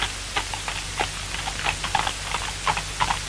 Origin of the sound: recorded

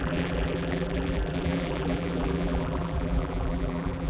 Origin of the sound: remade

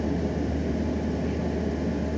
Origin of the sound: recorded